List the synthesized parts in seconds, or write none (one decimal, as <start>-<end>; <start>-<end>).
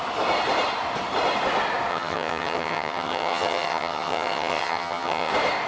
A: 1.9-5.3